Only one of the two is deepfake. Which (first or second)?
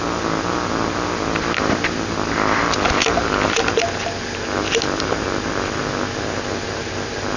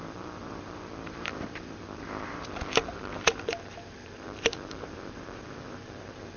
second